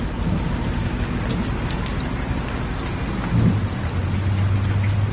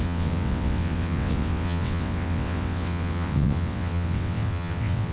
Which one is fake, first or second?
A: second